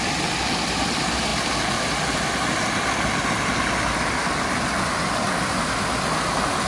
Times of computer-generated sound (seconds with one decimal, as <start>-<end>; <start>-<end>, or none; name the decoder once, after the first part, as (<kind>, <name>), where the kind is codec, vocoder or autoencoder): none